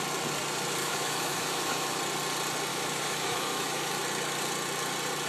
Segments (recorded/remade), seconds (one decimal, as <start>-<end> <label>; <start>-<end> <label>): 0.0-0.8 recorded; 0.8-2.0 remade; 2.0-2.7 recorded; 2.7-3.9 remade; 3.9-5.3 recorded